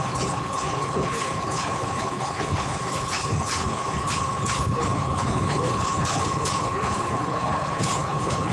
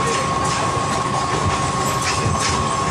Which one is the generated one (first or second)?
first